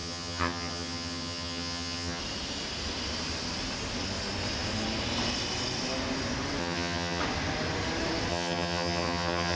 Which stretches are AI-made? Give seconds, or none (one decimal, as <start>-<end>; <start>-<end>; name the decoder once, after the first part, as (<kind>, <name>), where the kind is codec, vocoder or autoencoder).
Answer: 0.0-2.2 (vocoder, HiFi-GAN); 6.6-7.2; 8.3-9.6